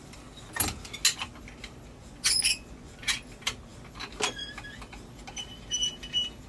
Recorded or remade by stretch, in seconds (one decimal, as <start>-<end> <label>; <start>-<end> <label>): 0.0-2.0 recorded; 2.0-3.1 remade; 3.1-6.5 recorded